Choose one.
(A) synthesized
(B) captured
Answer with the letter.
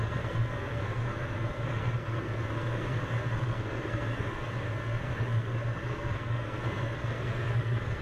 A